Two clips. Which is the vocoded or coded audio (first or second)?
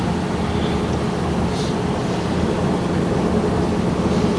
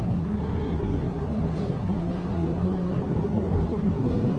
second